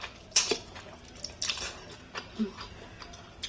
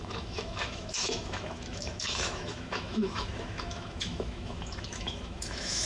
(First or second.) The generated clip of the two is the second